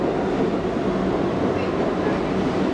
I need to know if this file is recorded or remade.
recorded